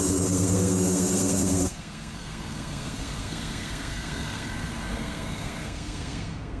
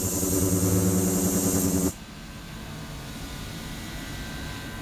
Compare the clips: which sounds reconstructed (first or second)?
first